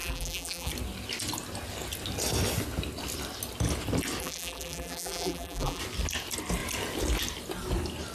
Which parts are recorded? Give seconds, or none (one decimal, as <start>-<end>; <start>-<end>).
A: 0.7-4.2; 5.8-8.1